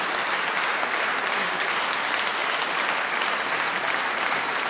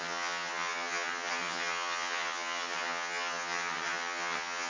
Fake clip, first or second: second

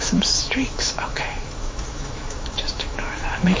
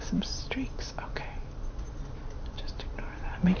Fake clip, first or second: first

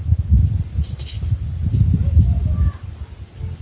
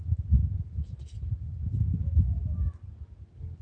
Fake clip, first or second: first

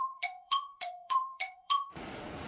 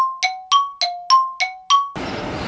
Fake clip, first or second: first